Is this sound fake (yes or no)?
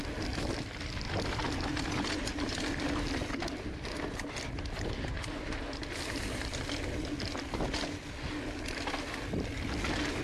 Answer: no